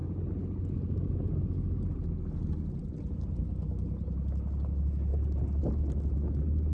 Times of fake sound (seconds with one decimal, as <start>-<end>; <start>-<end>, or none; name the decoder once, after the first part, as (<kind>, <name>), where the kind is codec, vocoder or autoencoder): none

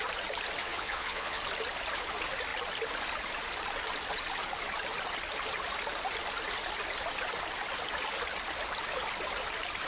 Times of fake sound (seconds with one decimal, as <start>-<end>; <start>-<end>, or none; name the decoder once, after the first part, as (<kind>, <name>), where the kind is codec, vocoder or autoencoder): 0.6-1.4 (vocoder, Vocos)

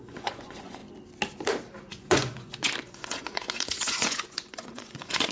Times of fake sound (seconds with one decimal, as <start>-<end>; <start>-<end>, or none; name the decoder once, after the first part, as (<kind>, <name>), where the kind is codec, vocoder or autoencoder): 0.0-0.8 (vocoder, Vocos); 1.9-5.3